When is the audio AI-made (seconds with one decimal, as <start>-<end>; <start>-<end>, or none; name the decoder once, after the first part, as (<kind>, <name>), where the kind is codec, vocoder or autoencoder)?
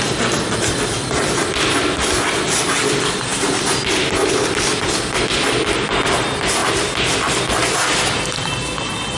none